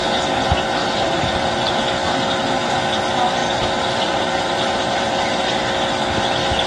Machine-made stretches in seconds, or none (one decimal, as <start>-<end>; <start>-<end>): 0.8-1.6; 3.4-5.4